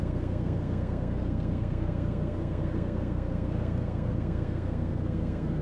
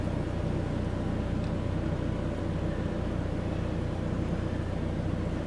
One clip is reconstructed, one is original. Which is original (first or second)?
second